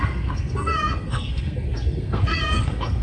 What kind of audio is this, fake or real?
fake